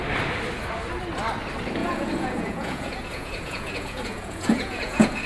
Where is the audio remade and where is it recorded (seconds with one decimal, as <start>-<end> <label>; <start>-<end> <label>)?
0.0-1.8 recorded; 1.8-5.3 remade